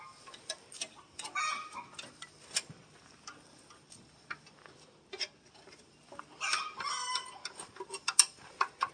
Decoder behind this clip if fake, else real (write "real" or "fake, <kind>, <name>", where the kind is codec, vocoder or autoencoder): real